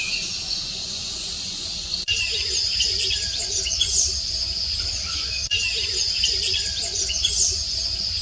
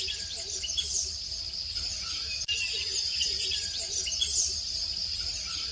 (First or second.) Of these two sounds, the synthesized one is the first